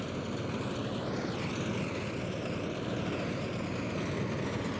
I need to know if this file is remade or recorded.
recorded